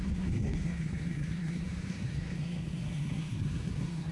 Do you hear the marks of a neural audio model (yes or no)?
yes